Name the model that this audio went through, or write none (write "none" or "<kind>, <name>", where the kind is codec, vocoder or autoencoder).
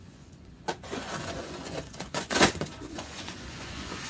vocoder, Vocos